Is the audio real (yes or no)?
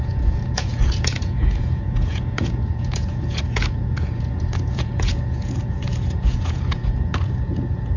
no